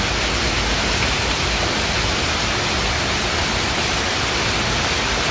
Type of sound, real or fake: real